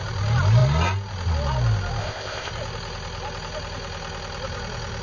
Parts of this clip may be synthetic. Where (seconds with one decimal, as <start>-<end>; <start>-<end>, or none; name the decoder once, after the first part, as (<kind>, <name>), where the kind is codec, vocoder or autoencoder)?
2.0-2.5 (codec, ZipCodec)

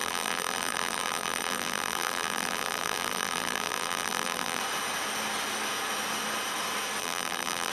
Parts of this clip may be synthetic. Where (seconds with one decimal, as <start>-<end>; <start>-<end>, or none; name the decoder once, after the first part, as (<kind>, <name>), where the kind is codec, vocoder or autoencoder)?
0.0-4.6 (vocoder, BigVGAN v2); 7.0-7.7

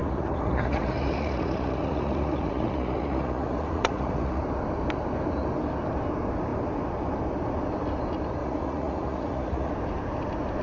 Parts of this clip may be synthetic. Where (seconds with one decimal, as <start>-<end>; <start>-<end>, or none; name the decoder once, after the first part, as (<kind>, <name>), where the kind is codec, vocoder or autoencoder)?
0.0-4.4 (vocoder, Vocos); 8.4-9.7

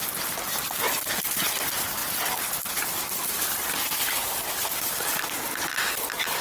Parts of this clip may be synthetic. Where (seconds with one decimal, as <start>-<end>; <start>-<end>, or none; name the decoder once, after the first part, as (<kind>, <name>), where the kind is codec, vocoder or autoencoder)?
none